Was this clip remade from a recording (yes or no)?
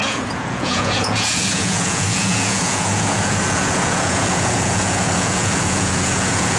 yes